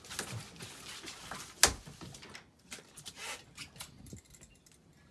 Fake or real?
real